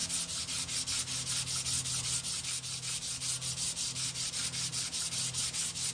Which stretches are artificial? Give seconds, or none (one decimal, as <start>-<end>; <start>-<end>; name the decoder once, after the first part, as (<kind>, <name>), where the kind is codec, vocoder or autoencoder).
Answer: none